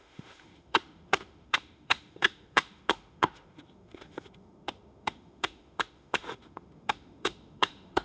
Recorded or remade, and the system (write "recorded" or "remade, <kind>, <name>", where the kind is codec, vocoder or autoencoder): remade, autoencoder, DAC-VAE